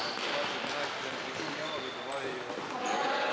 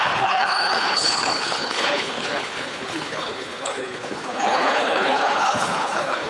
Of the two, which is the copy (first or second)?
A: second